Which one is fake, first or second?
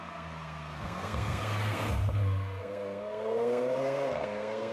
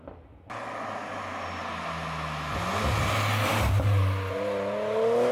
first